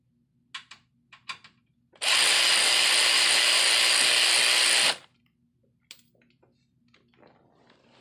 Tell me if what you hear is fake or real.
real